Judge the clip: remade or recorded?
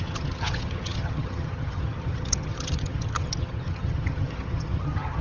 remade